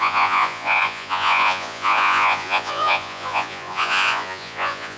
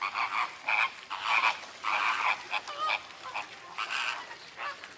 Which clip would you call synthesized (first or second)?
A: first